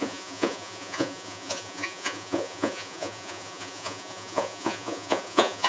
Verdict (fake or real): fake